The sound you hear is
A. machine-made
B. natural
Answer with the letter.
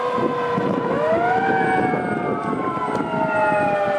B